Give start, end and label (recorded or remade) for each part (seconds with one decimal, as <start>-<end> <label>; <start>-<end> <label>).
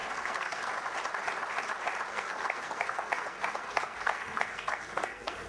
0.0-0.7 remade; 0.7-2.1 recorded; 2.1-5.5 remade